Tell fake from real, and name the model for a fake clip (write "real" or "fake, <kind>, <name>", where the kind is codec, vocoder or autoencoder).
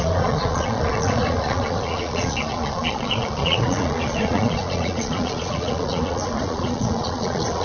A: fake, vocoder, Vocos